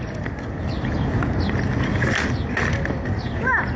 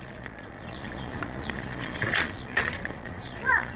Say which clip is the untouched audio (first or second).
first